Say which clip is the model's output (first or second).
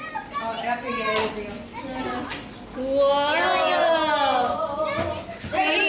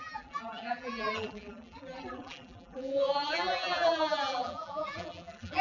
second